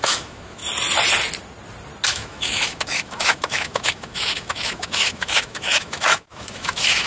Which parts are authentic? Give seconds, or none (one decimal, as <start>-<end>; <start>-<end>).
0.6-2.1